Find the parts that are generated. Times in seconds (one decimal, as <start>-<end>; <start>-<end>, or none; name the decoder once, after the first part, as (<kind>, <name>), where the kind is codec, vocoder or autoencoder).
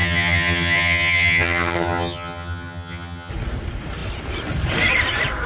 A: 0.0-3.3 (vocoder, HiFi-GAN)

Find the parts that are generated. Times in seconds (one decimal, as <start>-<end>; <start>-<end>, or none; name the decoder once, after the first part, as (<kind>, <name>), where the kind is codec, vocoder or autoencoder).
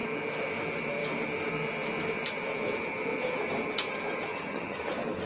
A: 4.3-4.8 (vocoder, HiFi-GAN)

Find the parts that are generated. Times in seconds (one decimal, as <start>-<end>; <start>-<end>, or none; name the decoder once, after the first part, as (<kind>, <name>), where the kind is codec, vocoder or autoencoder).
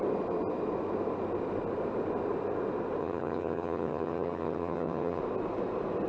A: 3.0-5.2 (vocoder, HiFi-GAN)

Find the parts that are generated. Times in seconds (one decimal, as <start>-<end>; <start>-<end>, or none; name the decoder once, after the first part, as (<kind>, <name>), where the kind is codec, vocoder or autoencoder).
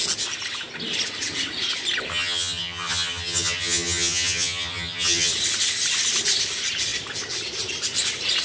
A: 2.1-5.3 (vocoder, HiFi-GAN)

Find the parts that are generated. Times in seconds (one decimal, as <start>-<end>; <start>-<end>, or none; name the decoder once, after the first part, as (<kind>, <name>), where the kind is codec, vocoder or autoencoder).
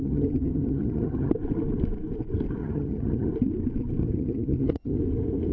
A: 0.0-1.3 (vocoder, HiFi-GAN); 2.6-3.3; 4.0-5.0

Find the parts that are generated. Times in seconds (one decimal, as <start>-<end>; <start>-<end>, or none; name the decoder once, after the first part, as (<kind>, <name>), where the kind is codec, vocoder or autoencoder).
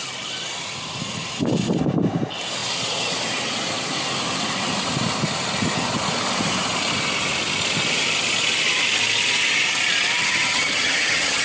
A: 10.2-11.4 (vocoder, HiFi-GAN)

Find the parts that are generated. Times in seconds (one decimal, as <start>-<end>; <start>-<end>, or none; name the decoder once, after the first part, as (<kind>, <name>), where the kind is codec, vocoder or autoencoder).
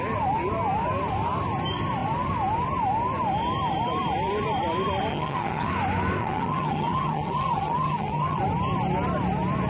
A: 5.1-5.7 (vocoder, HiFi-GAN); 6.2-8.4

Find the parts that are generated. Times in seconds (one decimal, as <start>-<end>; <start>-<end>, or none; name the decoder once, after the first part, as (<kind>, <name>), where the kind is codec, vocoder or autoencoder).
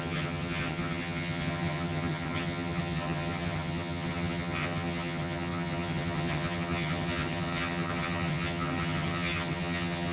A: 0.0-10.1 (vocoder, HiFi-GAN)